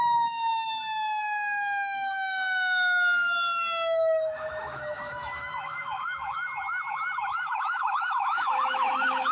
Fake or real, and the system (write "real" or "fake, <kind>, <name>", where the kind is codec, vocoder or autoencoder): fake, autoencoder, DAC-VAE